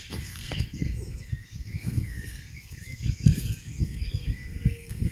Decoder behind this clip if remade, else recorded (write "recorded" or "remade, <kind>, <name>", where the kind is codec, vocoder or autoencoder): remade, codec, SNAC